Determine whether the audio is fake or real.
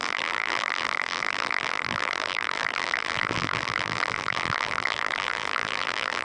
fake